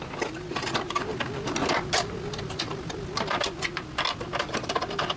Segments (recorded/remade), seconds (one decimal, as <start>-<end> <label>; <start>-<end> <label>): 0.0-5.2 recorded